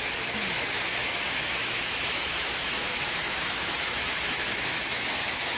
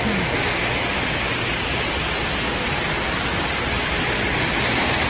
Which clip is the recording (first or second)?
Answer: second